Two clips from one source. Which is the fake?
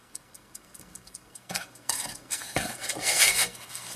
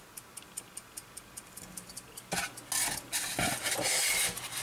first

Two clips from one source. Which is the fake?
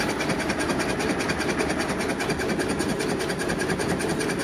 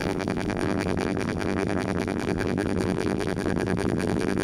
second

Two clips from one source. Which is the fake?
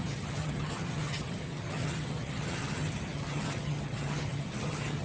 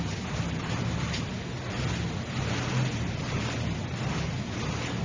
first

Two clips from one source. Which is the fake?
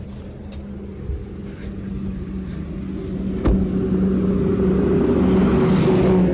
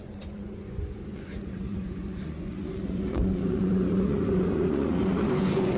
second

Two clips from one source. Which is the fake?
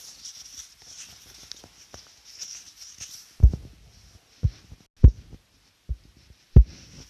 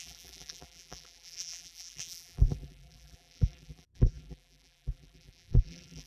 second